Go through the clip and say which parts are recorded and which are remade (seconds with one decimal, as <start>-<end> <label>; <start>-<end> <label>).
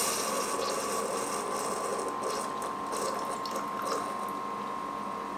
0.0-5.4 recorded